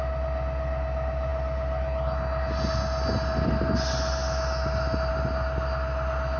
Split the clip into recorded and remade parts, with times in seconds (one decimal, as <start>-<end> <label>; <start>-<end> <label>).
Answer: 0.0-6.4 recorded